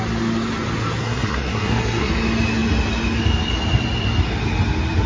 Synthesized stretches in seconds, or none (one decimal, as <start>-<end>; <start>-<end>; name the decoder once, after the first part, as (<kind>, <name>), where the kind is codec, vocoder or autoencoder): 1.0-2.1 (codec, SNAC)